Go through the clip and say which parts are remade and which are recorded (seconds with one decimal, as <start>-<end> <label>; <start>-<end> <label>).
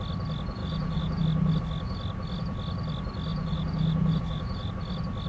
0.0-0.6 recorded; 0.6-1.2 remade; 1.2-3.3 recorded; 3.3-4.7 remade; 4.7-5.3 recorded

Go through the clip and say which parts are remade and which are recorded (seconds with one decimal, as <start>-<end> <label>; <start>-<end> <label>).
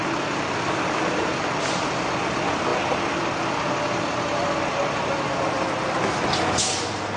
0.0-7.2 recorded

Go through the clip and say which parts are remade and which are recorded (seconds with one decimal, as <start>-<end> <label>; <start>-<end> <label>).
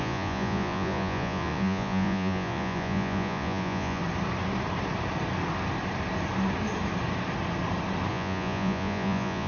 0.0-4.0 remade; 4.0-8.1 recorded; 8.1-9.5 remade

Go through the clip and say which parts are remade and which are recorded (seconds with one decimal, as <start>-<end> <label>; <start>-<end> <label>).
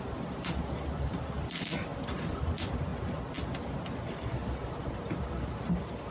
0.0-2.9 remade; 2.9-3.8 recorded; 3.8-6.1 remade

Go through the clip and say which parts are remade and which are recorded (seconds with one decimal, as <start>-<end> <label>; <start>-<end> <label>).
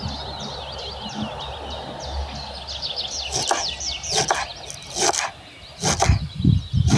0.0-7.0 recorded